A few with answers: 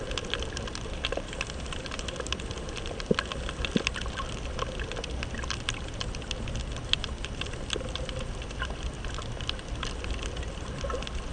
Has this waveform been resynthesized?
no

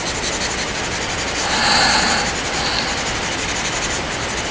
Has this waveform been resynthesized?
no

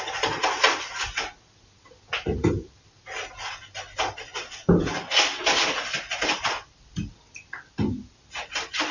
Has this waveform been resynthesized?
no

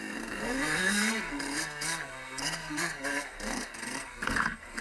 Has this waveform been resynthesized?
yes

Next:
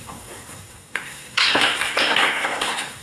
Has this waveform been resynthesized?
yes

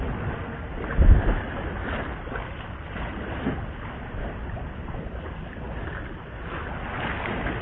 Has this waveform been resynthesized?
no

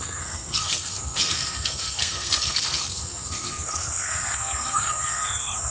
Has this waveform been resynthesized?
yes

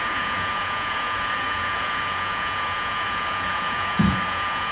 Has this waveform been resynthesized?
yes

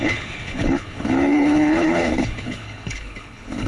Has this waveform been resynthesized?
yes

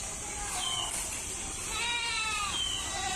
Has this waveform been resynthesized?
no